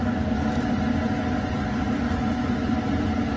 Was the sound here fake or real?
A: real